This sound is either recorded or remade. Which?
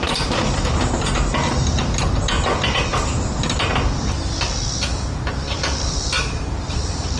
recorded